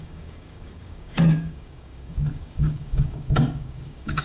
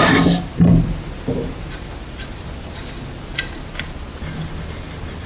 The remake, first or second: first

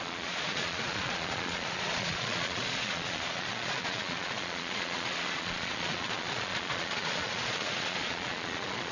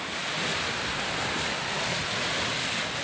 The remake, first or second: first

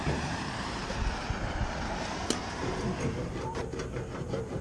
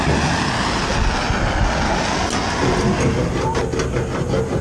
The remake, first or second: first